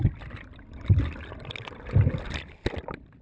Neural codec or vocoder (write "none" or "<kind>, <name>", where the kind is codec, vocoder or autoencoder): none